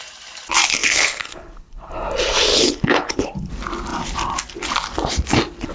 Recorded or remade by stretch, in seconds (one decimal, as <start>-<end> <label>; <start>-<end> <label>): 0.0-0.8 recorded; 0.8-1.9 remade; 1.9-2.5 recorded; 2.5-3.5 remade; 3.5-5.7 recorded

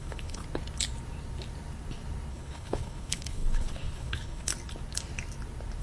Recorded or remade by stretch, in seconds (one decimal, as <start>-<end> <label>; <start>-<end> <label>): 0.0-0.4 remade; 0.4-2.3 recorded; 2.3-4.5 remade; 4.5-5.8 recorded

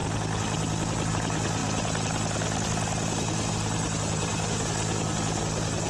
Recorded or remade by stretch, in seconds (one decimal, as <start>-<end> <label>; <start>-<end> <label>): 0.0-5.9 recorded

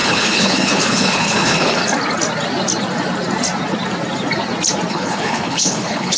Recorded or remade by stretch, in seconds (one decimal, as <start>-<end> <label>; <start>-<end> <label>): 0.0-1.8 remade; 1.8-4.9 recorded; 4.9-6.2 remade

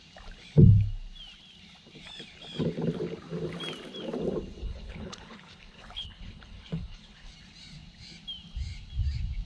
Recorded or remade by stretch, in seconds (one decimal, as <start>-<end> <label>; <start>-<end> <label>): 0.0-4.6 recorded; 4.6-7.3 remade; 7.3-9.5 recorded